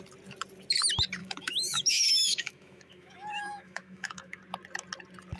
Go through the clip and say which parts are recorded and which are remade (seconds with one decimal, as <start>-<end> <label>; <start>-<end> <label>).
0.0-1.2 recorded; 1.2-4.4 remade; 4.4-5.4 recorded